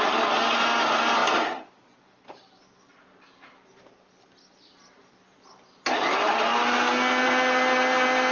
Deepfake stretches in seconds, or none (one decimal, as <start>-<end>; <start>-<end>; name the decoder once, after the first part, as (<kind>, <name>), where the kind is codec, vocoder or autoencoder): none